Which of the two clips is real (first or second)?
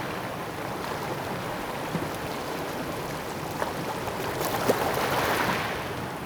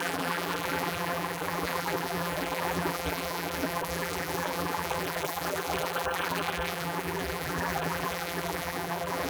first